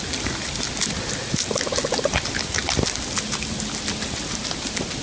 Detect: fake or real real